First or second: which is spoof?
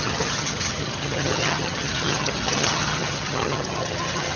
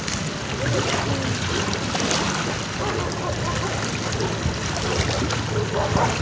first